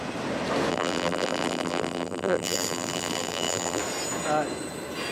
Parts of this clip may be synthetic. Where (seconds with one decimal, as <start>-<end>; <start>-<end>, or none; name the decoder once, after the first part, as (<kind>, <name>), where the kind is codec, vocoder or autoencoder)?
0.7-3.8 (vocoder, BigVGAN v2)